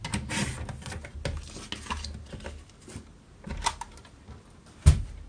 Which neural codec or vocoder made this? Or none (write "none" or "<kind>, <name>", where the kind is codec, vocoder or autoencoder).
none